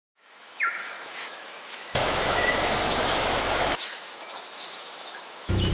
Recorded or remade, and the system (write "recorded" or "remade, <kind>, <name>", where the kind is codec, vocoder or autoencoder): remade, autoencoder, DAC-VAE